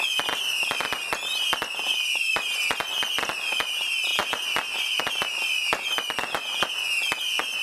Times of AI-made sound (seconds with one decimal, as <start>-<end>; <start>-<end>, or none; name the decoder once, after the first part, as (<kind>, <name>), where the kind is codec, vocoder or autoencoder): none